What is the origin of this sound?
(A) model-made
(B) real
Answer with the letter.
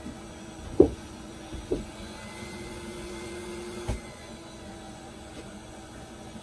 A